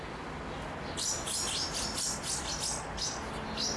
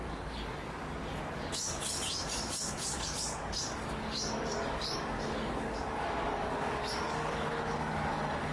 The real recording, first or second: first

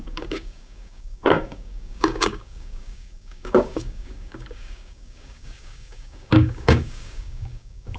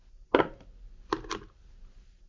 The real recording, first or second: second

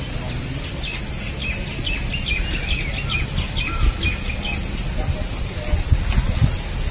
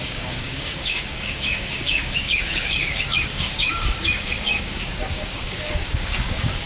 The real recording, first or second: first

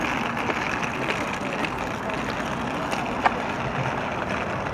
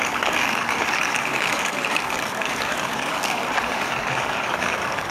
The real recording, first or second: first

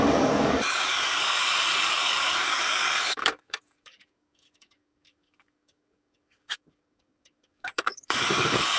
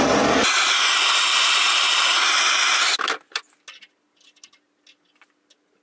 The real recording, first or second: second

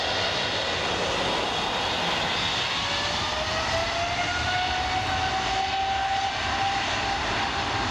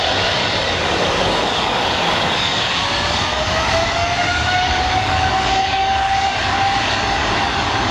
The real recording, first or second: first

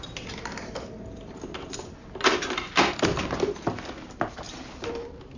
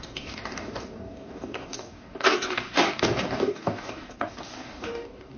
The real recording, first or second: first